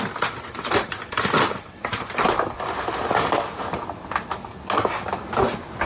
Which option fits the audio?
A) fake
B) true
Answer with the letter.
B